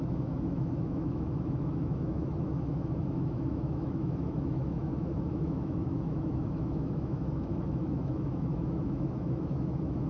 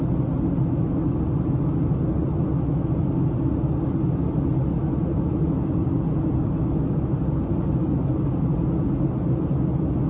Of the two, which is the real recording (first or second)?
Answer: second